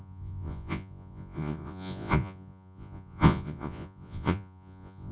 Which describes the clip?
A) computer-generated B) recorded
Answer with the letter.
A